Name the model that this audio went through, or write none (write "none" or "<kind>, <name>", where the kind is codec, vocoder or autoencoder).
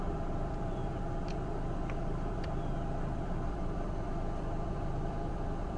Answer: vocoder, BigVGAN v2